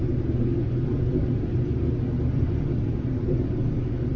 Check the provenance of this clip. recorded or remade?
recorded